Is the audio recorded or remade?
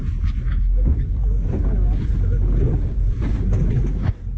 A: recorded